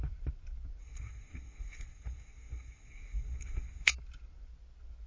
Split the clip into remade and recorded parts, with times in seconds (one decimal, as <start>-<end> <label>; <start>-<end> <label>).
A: 0.0-0.8 recorded; 0.8-3.9 remade; 3.9-5.1 recorded